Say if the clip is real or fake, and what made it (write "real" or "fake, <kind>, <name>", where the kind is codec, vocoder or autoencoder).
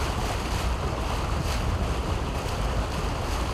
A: real